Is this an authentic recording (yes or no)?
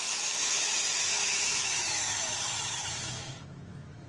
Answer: no